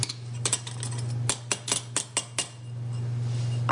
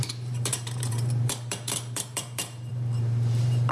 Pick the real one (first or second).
first